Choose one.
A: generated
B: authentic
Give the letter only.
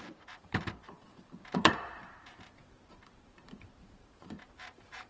A